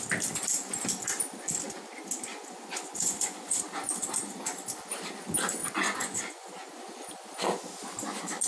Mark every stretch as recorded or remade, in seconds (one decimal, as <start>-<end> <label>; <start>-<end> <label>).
0.0-2.3 recorded; 2.3-3.6 remade; 3.6-5.6 recorded; 5.6-6.7 remade; 6.7-8.5 recorded